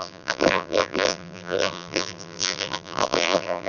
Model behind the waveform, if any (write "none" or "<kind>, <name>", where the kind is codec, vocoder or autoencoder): vocoder, BigVGAN v2